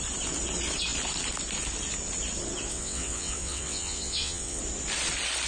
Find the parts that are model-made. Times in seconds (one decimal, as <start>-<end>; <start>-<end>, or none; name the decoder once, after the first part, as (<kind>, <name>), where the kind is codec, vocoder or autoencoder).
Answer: 2.7-4.6 (vocoder, WaveNeXt)